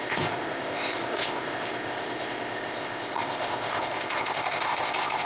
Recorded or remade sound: remade